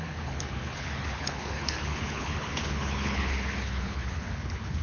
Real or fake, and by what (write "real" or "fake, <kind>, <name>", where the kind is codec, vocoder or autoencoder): fake, codec, HILCodec